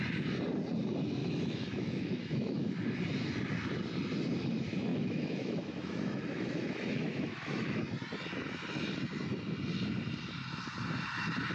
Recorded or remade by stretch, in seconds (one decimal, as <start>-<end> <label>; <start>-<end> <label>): 0.0-1.2 recorded; 1.2-2.7 remade; 2.7-4.9 recorded; 4.9-7.8 remade; 7.8-11.5 recorded